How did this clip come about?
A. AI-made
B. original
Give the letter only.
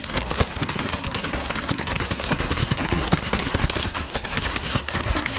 A